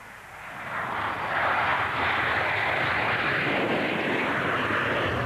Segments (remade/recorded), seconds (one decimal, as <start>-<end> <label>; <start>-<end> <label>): 0.0-5.3 recorded